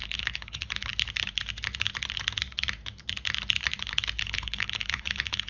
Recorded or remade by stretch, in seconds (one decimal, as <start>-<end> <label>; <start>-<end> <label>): 0.0-0.9 remade; 0.9-4.2 recorded; 4.2-5.5 remade